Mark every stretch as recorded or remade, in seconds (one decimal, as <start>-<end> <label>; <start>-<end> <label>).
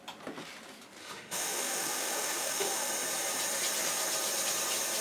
0.0-1.0 recorded; 1.0-2.9 remade; 2.9-5.0 recorded